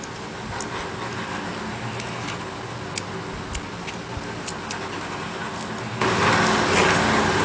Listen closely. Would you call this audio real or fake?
real